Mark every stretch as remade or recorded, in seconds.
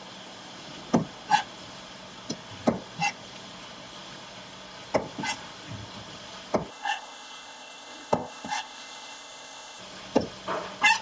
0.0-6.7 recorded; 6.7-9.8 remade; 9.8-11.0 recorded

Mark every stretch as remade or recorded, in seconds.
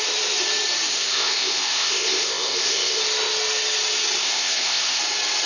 0.0-0.9 recorded; 0.9-3.0 remade; 3.0-4.2 recorded; 4.2-5.0 remade; 5.0-5.5 recorded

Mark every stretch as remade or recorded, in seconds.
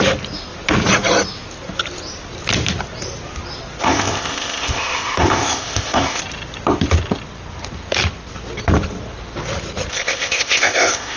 0.0-3.8 recorded; 3.8-6.2 remade; 6.2-9.9 recorded; 9.9-11.2 remade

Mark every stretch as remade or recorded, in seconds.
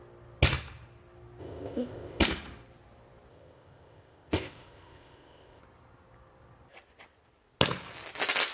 0.0-1.4 recorded; 1.4-2.2 remade; 2.2-3.3 recorded; 3.3-5.6 remade; 5.6-8.5 recorded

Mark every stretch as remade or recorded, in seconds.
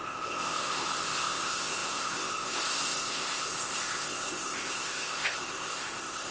0.0-6.3 remade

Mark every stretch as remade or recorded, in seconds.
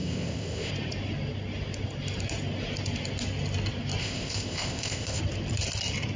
0.0-0.7 remade; 0.7-4.0 recorded; 4.0-5.2 remade; 5.2-6.2 recorded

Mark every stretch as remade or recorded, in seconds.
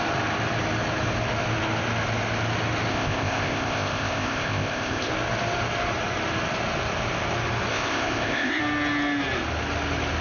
0.0-2.9 recorded; 2.9-5.1 remade; 5.1-7.7 recorded; 7.7-8.6 remade; 8.6-10.2 recorded